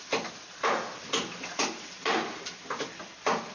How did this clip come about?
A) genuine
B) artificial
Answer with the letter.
A